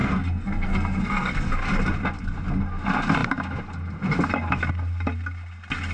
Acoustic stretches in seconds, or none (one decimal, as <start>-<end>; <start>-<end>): 1.5-5.9